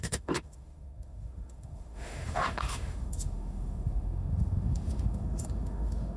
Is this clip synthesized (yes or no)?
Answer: yes